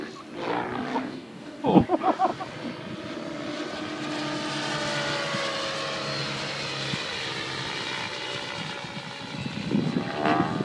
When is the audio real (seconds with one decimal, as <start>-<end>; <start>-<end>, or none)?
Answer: 0.0-1.0; 1.6-10.6